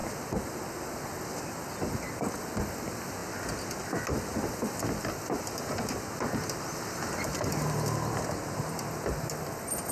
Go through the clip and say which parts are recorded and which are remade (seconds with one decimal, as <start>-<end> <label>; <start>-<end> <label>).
0.0-9.9 recorded